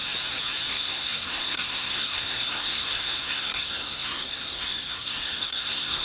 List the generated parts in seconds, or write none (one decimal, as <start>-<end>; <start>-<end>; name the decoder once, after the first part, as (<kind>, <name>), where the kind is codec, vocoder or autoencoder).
0.7-6.0 (codec, SNAC)